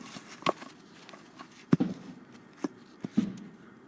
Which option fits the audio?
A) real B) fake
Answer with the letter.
A